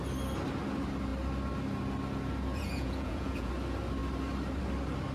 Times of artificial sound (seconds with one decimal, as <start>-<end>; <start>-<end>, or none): 2.5-3.5